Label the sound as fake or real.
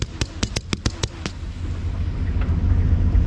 real